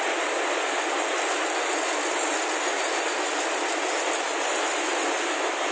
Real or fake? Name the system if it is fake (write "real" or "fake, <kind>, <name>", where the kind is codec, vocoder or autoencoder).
real